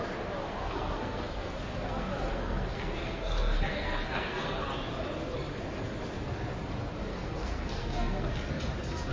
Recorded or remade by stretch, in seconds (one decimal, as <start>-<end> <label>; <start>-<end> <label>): 0.0-0.4 recorded; 0.4-4.7 remade; 4.7-7.1 recorded; 7.1-8.5 remade; 8.5-9.1 recorded